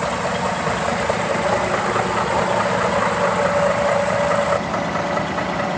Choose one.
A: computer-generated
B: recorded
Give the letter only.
B